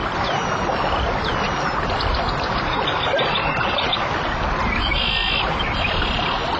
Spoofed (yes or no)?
no